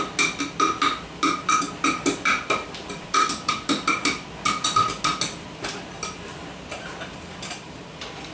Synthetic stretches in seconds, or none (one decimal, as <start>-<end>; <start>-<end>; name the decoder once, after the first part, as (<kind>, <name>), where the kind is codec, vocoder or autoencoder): 2.8-3.9 (vocoder, BigVGAN v2)